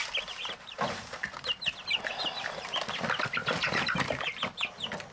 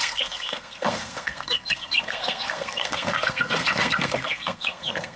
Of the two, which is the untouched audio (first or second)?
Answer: first